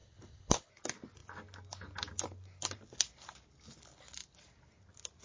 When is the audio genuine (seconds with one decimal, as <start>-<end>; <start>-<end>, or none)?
0.7-5.2